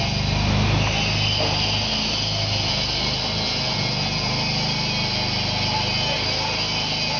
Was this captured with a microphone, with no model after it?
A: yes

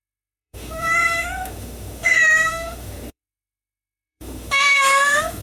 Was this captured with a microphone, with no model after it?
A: no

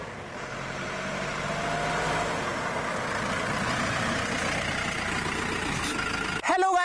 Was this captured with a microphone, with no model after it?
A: yes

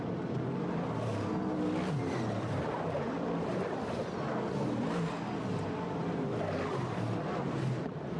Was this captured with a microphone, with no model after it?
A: yes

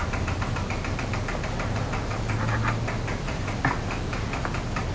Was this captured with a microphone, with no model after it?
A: yes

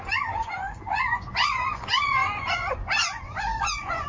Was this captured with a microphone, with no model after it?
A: no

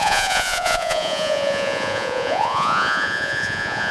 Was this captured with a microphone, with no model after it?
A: no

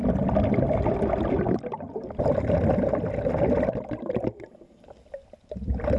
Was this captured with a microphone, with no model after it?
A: yes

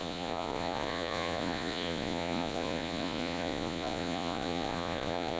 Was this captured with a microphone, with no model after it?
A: no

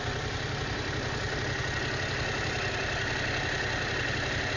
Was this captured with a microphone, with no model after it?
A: yes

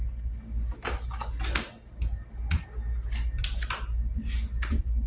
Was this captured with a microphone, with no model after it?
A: yes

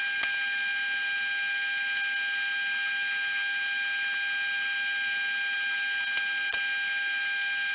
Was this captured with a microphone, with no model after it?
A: yes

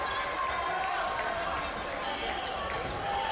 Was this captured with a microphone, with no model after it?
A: yes